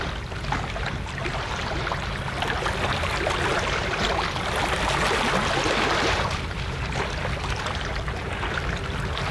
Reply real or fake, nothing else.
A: fake